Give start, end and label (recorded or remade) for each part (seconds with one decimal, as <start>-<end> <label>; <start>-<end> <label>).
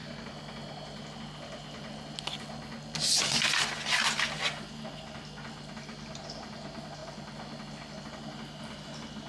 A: 0.0-9.3 recorded